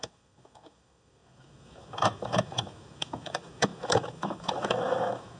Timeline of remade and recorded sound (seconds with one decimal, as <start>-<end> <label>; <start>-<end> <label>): 0.0-5.4 remade